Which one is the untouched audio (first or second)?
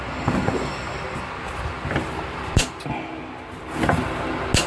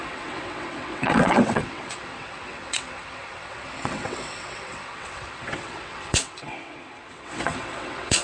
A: first